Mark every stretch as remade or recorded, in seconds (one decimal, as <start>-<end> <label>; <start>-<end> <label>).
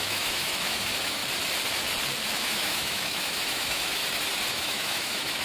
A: 0.0-1.2 remade; 1.2-2.4 recorded; 2.4-4.0 remade; 4.0-4.5 recorded; 4.5-5.4 remade